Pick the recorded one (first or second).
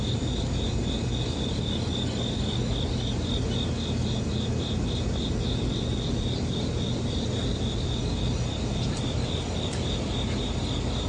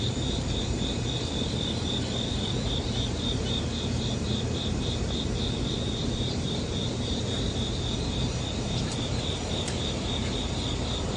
first